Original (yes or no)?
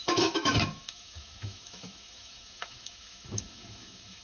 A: no